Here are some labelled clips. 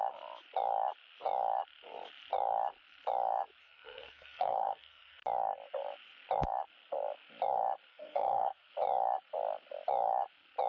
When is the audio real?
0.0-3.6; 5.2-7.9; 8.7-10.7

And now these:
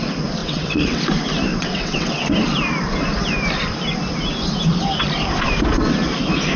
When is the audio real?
0.0-0.4; 1.0-1.5; 2.2-6.6

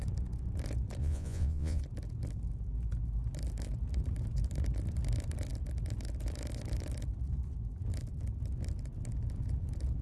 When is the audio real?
0.0-1.0; 1.8-10.0

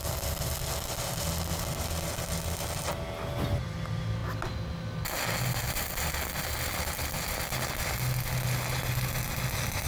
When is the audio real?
0.0-9.9

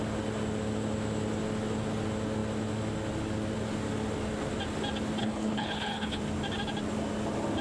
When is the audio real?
0.0-5.2; 6.2-7.6

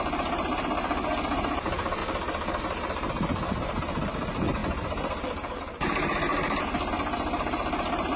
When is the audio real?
2.0-2.6; 6.3-6.9

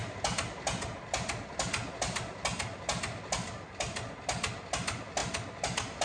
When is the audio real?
0.0-6.0